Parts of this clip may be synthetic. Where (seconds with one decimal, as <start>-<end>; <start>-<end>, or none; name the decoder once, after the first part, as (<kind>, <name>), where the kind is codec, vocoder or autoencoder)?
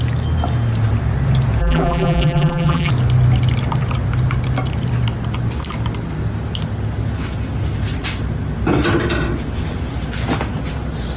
1.6-2.9 (vocoder, BigVGAN v2)